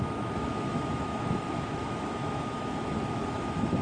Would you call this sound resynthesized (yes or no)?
yes